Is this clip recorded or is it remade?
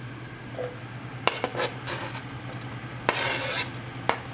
recorded